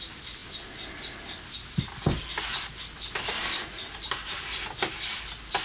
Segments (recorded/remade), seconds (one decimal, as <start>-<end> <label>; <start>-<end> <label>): 0.0-5.6 recorded

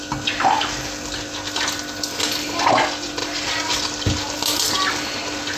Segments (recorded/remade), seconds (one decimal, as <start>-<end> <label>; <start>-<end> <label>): 0.0-3.2 recorded; 3.2-3.8 remade; 3.8-5.6 recorded

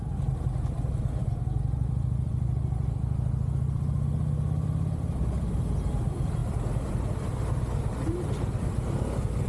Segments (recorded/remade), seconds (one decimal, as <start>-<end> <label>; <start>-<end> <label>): 0.0-9.5 remade

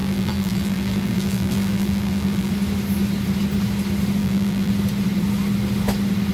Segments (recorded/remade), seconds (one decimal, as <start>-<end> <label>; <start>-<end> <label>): 0.0-2.5 remade; 2.5-4.2 recorded; 4.2-4.7 remade; 4.7-6.3 recorded

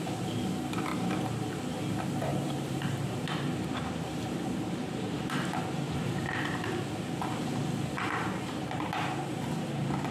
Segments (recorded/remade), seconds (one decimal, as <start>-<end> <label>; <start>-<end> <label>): 0.0-0.9 recorded; 0.9-1.5 remade; 1.5-2.3 recorded; 2.3-5.6 remade; 5.6-6.0 recorded; 6.0-6.8 remade; 6.8-10.1 recorded

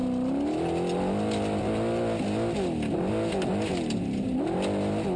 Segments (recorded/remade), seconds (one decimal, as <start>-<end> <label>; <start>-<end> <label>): 0.0-5.2 recorded